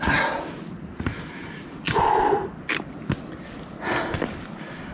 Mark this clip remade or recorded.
recorded